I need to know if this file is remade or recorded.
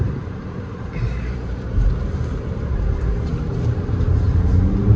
remade